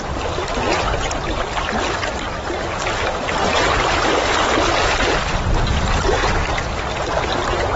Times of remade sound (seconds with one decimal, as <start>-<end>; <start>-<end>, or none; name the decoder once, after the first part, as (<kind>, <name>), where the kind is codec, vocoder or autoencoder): none